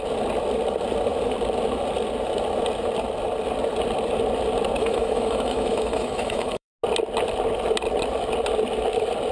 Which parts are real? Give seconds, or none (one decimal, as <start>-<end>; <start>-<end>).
0.0-4.8; 6.7-9.3